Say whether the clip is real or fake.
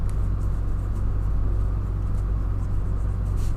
real